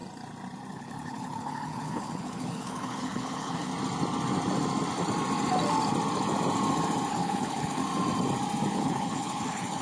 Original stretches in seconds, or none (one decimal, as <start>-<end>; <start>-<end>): 0.0-0.7; 3.7-7.1; 7.8-8.7